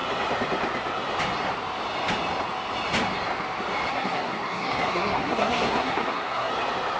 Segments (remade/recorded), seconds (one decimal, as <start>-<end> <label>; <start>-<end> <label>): 0.0-3.9 recorded; 3.9-6.5 remade; 6.5-7.0 recorded